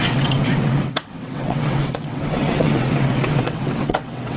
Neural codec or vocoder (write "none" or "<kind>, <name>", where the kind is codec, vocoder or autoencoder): vocoder, WaveNeXt